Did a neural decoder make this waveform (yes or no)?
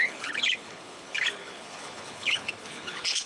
yes